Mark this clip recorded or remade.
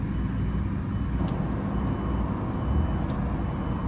recorded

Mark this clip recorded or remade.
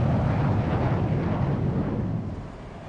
recorded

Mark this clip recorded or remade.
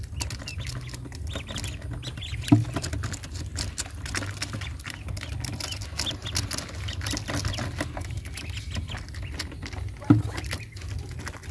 recorded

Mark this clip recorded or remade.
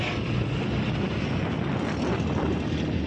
recorded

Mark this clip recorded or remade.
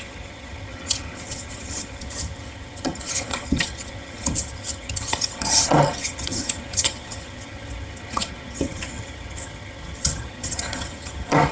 remade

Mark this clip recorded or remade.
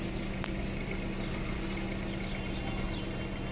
recorded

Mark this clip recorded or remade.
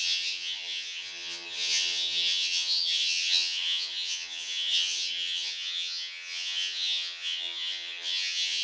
remade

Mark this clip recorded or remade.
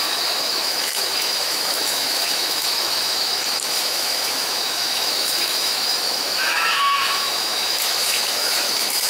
remade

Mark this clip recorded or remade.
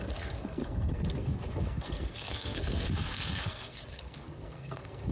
remade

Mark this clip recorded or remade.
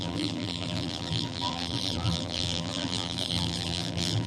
remade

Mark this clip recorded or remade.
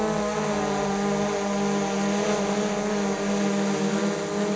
recorded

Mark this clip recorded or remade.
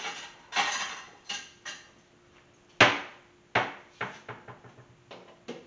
recorded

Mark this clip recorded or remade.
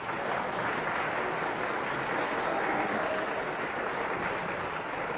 recorded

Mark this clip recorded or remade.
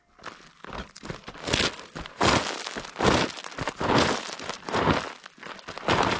recorded